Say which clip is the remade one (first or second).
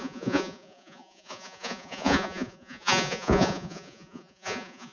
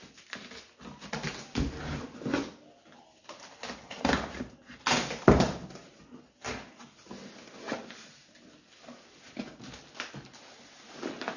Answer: first